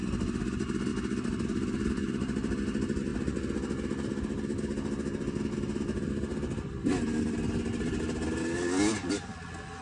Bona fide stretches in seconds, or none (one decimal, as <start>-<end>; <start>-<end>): 0.0-9.8